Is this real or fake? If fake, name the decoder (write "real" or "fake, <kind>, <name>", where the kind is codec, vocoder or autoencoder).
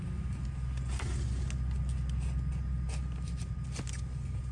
real